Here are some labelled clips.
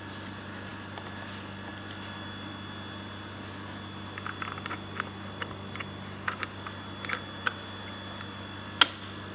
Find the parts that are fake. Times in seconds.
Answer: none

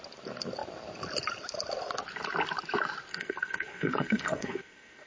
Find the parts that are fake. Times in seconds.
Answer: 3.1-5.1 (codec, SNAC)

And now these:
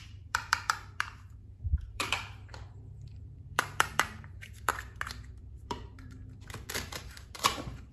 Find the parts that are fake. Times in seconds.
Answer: 0.0-4.7 (vocoder, BigVGAN v2); 5.4-6.2; 6.9-7.9